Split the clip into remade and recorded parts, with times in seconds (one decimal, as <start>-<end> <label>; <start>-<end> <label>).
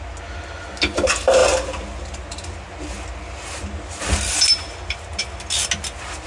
0.0-6.3 recorded